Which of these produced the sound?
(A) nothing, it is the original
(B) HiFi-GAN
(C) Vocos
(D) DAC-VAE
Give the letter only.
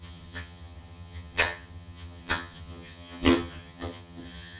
B